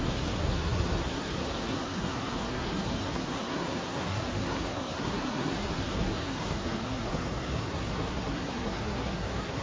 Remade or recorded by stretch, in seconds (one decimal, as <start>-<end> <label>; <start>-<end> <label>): 0.0-9.6 remade